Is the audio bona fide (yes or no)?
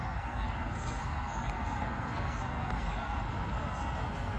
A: no